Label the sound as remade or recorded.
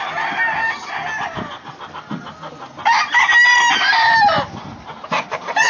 recorded